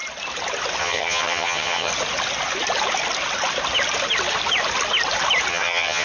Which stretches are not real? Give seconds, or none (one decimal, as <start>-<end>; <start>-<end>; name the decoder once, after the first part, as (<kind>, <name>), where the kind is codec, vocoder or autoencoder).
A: 0.8-1.9 (vocoder, HiFi-GAN); 5.5-6.0